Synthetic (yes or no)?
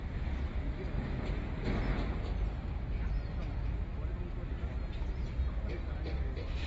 no